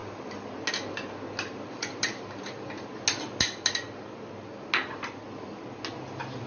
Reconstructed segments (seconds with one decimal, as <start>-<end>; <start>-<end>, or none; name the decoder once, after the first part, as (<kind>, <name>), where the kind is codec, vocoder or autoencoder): none